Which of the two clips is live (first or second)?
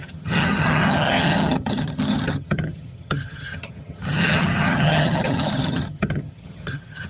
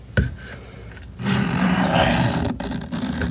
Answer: second